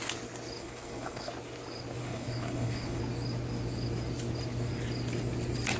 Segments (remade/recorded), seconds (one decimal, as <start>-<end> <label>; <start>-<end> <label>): 0.0-0.6 recorded; 0.6-1.3 remade; 1.3-2.0 recorded; 2.0-3.0 remade; 3.0-5.8 recorded